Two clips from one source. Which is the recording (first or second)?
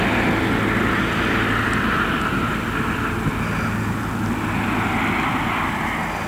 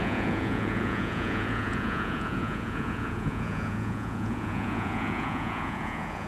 first